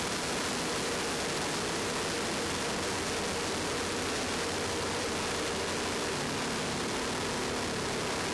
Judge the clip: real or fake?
real